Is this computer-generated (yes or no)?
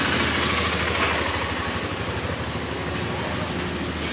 no